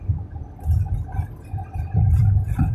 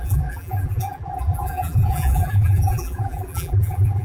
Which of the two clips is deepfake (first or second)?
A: second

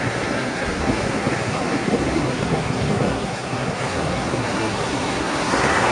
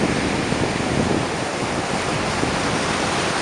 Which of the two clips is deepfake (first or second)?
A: first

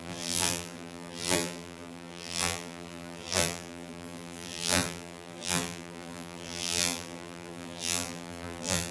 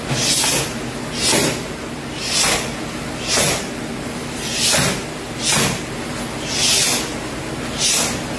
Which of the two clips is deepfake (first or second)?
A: first